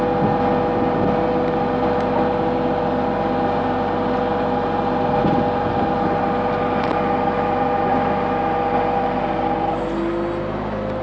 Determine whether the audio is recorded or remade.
recorded